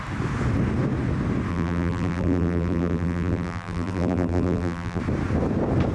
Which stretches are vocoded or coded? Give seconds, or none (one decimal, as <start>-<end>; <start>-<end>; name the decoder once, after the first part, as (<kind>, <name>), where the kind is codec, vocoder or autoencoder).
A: 1.5-5.0 (vocoder, BigVGAN v2)